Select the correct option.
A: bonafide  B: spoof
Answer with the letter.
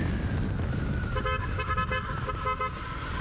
A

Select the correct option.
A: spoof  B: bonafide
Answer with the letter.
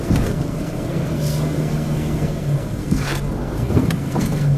A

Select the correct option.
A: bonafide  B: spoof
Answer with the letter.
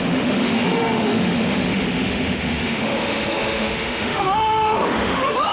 B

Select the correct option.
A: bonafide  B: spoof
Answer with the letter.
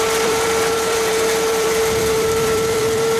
B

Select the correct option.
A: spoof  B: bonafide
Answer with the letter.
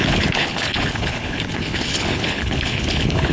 A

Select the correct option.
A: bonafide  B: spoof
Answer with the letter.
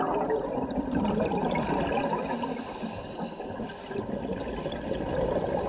A